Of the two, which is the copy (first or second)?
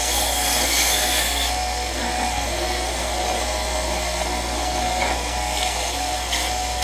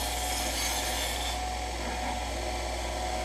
first